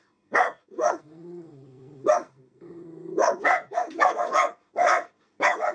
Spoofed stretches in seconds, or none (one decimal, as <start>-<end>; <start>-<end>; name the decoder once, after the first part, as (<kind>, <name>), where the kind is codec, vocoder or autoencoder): 0.0-5.7 (codec, SNAC)